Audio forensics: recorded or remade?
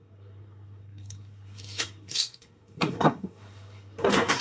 remade